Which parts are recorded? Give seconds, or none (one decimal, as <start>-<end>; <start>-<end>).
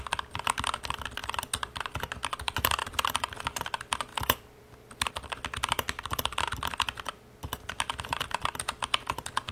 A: 0.0-1.2; 1.9-2.8; 3.4-4.1; 5.1-9.5